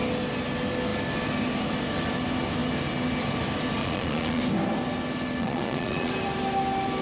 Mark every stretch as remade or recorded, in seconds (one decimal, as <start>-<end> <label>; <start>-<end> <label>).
0.0-3.8 recorded; 3.8-4.4 remade; 4.4-5.4 recorded; 5.4-6.1 remade; 6.1-7.0 recorded